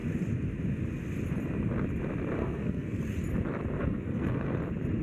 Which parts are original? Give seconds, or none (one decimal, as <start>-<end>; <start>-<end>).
0.0-2.4; 3.0-3.8; 4.6-5.0